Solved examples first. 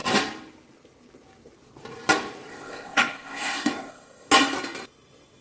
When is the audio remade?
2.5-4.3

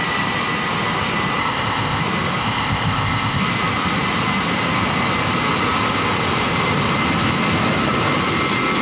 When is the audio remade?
1.4-2.0; 2.4-3.4

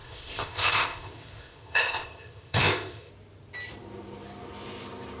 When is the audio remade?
0.0-3.1

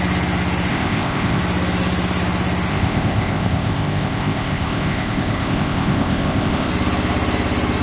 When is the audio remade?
0.7-1.4; 2.7-6.7